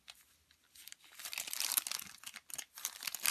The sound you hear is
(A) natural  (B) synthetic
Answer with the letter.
A